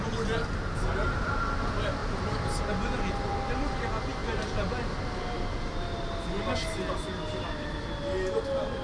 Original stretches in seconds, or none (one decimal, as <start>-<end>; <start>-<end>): 0.0-8.8